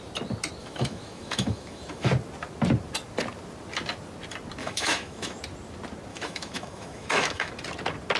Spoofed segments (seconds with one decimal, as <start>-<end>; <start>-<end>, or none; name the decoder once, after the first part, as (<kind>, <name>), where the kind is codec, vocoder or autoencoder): 0.6-2.1 (autoencoder, DAC-VAE); 4.6-5.4; 6.1-7.5